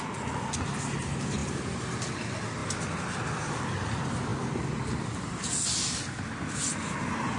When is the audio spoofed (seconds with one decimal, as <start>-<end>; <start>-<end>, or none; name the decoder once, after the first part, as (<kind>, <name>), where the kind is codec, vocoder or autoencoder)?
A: none